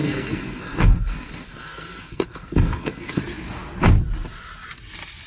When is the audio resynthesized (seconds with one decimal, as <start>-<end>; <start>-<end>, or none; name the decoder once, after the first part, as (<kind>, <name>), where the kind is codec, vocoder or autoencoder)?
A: 0.0-3.2 (codec, SNAC)